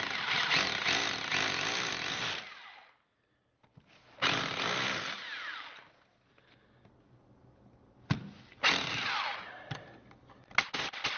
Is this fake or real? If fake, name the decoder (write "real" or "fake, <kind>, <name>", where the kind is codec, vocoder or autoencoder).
real